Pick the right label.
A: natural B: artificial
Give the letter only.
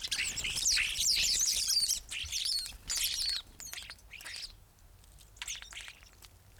A